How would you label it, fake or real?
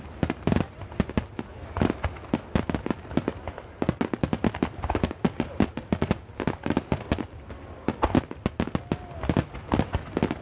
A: real